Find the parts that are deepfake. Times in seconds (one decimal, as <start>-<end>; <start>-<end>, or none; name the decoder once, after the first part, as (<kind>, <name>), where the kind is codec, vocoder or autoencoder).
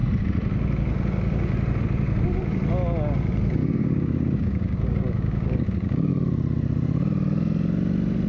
3.6-6.1 (codec, DAC)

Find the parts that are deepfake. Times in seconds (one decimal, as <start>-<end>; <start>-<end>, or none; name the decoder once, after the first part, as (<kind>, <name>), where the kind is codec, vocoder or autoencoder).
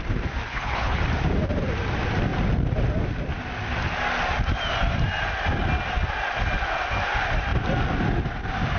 0.5-1.0 (codec, HILCodec)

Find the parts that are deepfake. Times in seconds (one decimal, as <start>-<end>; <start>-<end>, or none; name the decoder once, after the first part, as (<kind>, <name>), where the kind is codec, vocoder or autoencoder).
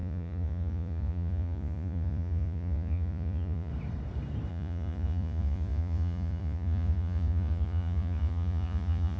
0.0-3.7 (vocoder, Vocos); 4.5-9.2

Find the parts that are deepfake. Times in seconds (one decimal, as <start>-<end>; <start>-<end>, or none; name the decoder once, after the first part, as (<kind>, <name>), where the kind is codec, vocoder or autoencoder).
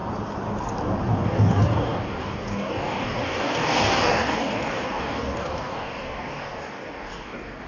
1.2-7.7 (codec, DAC)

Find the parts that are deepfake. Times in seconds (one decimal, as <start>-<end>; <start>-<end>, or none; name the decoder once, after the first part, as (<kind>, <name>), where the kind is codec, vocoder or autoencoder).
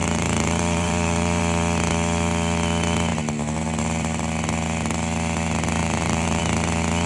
0.0-1.4 (vocoder, BigVGAN v2); 5.8-6.4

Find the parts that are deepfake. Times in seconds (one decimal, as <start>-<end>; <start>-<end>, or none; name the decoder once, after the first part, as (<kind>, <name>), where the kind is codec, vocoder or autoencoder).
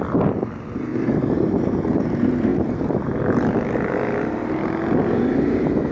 0.9-2.0 (vocoder, BigVGAN v2); 2.5-3.1